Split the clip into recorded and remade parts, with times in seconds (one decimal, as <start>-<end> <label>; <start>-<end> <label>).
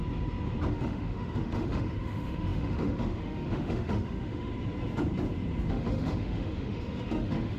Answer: 0.0-0.7 recorded; 0.7-4.5 remade; 4.5-5.7 recorded; 5.7-7.6 remade